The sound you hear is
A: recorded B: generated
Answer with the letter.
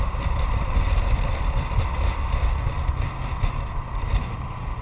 A